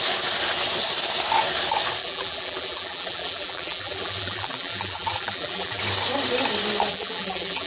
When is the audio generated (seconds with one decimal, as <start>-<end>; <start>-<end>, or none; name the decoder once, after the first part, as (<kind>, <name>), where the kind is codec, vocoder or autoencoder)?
2.0-5.8 (vocoder, BigVGAN v2); 6.9-7.7